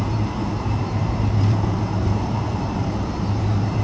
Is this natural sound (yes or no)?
no